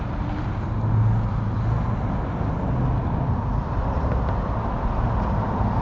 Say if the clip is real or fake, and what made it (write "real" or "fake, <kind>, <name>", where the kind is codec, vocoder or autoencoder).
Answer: real